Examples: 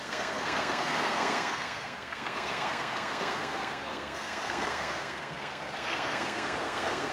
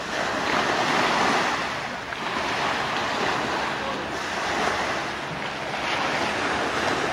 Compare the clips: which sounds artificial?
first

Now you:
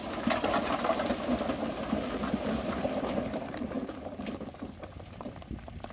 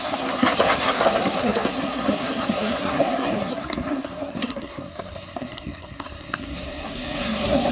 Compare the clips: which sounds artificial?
second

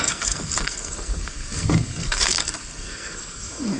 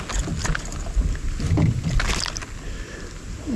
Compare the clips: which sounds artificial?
first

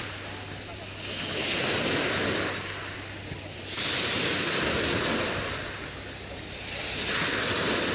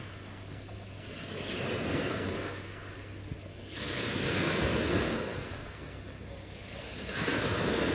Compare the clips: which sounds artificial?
second